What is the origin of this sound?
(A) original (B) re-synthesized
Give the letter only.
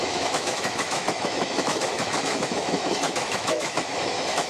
B